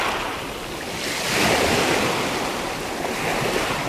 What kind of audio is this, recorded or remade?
recorded